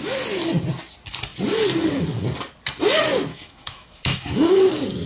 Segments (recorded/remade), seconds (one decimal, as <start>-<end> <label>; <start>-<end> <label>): 0.0-3.3 recorded; 3.3-4.6 remade; 4.6-5.1 recorded